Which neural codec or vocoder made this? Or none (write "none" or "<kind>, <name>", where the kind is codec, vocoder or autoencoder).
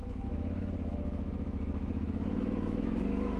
autoencoder, DAC-VAE